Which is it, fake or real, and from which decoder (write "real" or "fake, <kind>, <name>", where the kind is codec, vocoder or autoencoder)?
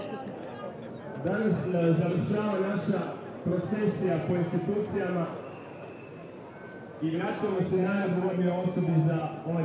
real